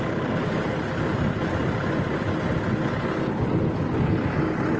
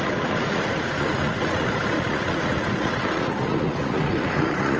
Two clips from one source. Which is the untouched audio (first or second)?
first